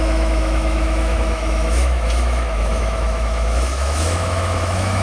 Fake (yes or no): yes